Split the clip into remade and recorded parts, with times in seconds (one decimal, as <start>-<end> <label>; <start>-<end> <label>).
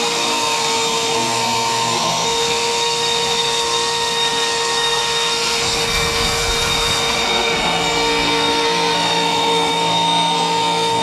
0.0-11.0 remade